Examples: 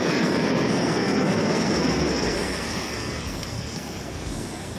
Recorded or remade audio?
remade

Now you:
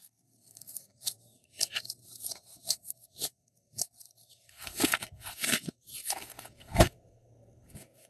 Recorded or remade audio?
remade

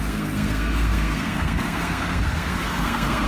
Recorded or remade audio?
remade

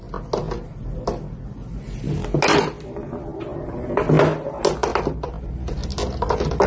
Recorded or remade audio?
recorded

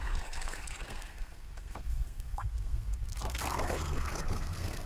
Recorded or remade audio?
remade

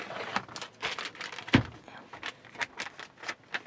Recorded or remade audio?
recorded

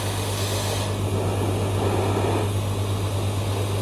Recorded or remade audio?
recorded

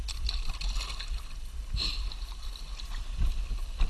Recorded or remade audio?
recorded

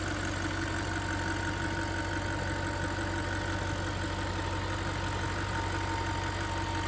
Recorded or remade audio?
recorded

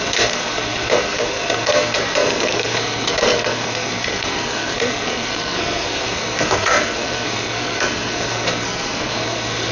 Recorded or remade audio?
remade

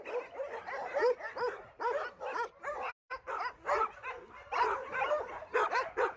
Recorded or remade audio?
recorded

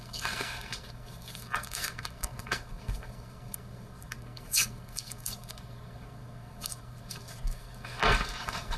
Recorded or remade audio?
remade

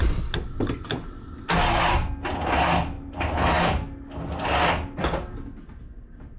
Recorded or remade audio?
recorded